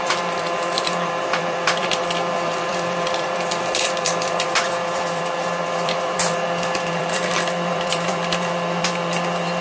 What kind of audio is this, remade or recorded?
remade